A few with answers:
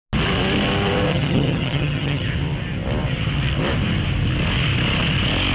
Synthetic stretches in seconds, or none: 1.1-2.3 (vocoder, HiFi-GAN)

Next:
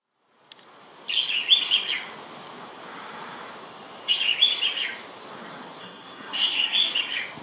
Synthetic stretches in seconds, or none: 5.8-6.9 (codec, SNAC)

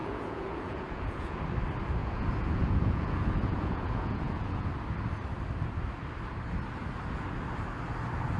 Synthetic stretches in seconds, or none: 0.0-1.4 (vocoder, Vocos); 2.0-4.7